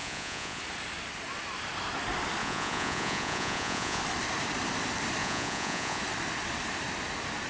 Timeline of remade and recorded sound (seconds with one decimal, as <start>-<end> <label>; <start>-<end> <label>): 0.0-0.6 remade; 0.6-2.4 recorded; 2.4-4.0 remade; 4.0-5.2 recorded; 5.2-6.0 remade; 6.0-7.5 recorded